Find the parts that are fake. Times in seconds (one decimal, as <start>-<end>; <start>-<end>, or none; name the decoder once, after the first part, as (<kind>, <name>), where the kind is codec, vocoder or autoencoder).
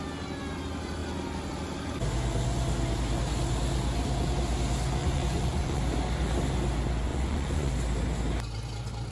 5.0-5.8 (vocoder, Vocos); 7.1-7.7